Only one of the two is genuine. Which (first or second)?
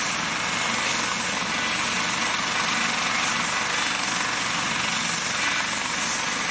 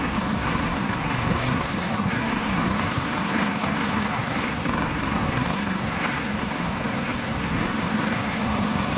first